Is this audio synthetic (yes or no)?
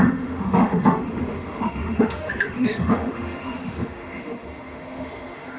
yes